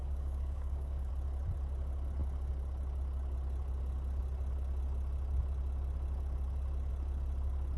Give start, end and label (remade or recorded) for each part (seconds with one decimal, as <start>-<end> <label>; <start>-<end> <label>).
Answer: 0.0-1.1 remade; 1.1-7.8 recorded